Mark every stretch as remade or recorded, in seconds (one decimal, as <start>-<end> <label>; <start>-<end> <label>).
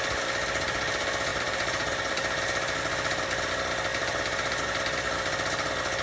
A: 0.0-1.3 recorded; 1.3-2.1 remade; 2.1-3.9 recorded; 3.9-4.8 remade; 4.8-6.0 recorded